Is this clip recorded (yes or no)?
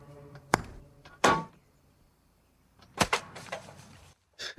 no